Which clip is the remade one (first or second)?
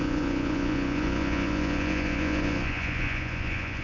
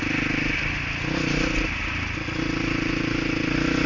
first